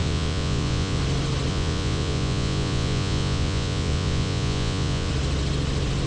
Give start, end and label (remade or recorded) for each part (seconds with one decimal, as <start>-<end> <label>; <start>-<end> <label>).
0.0-1.0 remade; 1.0-1.5 recorded; 1.5-5.1 remade; 5.1-6.1 recorded